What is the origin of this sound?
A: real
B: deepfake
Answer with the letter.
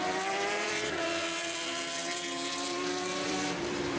B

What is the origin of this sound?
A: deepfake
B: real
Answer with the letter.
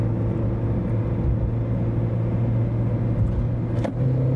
B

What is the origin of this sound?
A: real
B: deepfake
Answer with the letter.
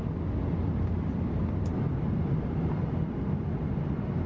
A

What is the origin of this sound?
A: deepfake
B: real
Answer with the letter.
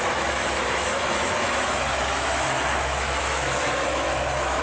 A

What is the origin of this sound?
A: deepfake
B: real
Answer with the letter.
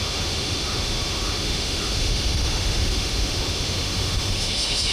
A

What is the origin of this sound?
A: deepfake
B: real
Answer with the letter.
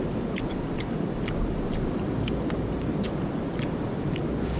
B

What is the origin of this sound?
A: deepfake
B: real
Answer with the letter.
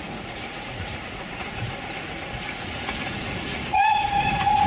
A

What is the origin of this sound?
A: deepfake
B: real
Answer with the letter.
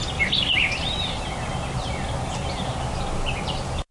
B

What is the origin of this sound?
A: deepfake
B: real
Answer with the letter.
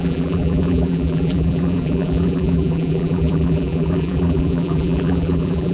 A